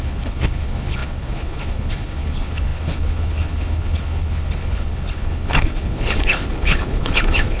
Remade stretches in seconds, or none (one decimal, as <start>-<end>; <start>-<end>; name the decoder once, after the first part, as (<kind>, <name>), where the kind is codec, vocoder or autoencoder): 0.0-7.6 (codec, HILCodec)